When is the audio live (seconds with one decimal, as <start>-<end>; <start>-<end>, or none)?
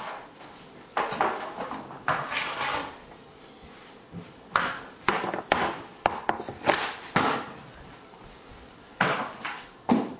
0.0-10.2